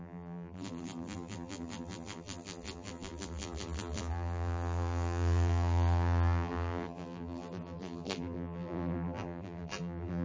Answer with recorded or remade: remade